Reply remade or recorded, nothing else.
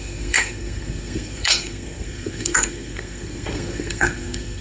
remade